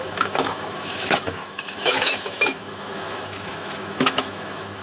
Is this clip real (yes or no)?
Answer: no